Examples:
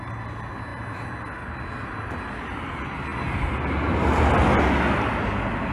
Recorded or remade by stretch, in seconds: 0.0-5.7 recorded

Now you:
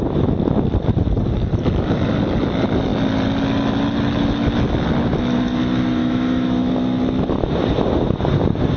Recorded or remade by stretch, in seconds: 0.0-6.0 recorded; 6.0-6.7 remade; 6.7-8.8 recorded

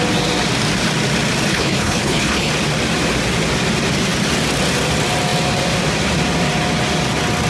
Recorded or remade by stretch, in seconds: 0.0-1.5 recorded; 1.5-2.5 remade; 2.5-7.5 recorded

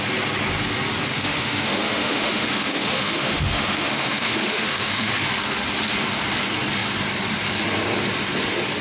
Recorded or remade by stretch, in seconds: 0.0-1.1 recorded; 1.1-5.1 remade; 5.1-8.8 recorded

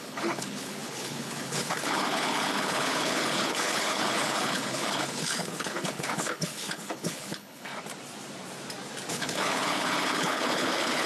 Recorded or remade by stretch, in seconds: 0.0-7.7 remade; 7.7-9.1 recorded; 9.1-11.1 remade